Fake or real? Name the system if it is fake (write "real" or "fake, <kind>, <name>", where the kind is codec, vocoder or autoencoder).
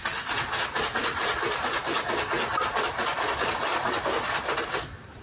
real